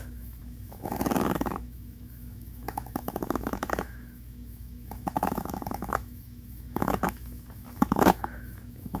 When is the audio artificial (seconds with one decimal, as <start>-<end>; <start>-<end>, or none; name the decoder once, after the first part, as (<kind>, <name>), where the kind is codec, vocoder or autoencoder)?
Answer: 0.0-9.0 (autoencoder, DAC-VAE)